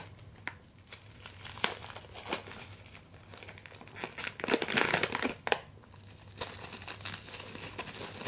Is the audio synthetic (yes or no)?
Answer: no